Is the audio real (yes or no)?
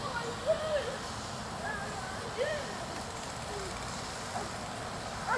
no